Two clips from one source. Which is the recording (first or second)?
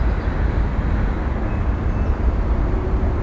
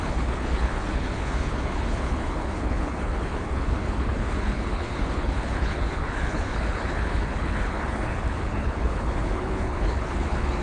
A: first